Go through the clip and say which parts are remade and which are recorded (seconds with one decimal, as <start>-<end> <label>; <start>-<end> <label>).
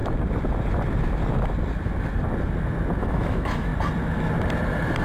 0.0-3.0 recorded; 3.0-3.7 remade; 3.7-5.0 recorded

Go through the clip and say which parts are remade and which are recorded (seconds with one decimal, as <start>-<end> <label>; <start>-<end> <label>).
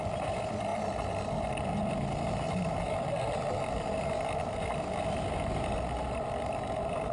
0.0-7.1 recorded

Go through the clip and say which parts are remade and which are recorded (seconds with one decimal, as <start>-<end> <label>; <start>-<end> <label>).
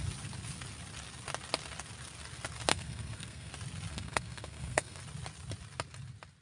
0.0-2.7 recorded; 2.7-3.5 remade; 3.5-3.9 recorded; 3.9-5.0 remade; 5.0-6.4 recorded